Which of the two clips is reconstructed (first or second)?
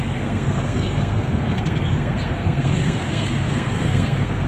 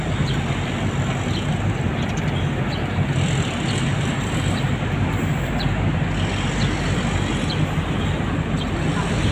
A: first